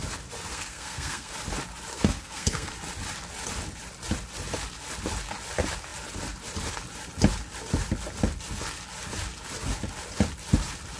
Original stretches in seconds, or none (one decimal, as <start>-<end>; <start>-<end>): 0.0-0.5; 1.3-1.9; 2.7-11.0

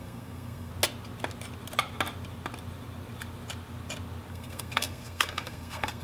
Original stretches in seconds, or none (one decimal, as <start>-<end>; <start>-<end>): 0.7-4.3

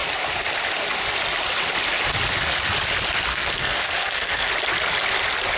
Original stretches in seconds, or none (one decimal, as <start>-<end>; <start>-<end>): 0.0-3.3; 4.5-5.6

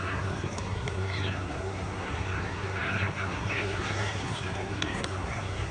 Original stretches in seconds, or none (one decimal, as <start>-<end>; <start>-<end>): none

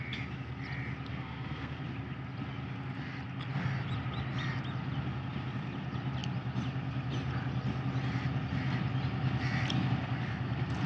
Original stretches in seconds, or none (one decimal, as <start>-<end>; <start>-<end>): 0.0-1.1; 1.8-10.9

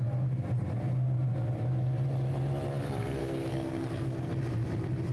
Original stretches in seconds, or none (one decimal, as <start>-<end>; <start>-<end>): 0.0-3.2; 4.4-5.1

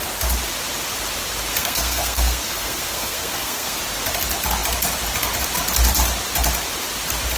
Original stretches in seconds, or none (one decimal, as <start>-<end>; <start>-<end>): 0.0-1.5; 3.8-7.4

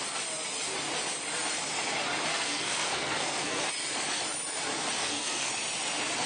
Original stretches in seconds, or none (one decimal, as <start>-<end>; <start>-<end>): 0.0-2.3; 3.6-5.0; 5.5-6.3